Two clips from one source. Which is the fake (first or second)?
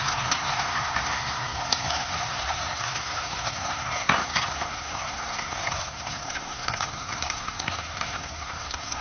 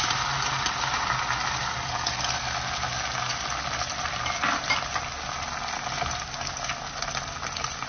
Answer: first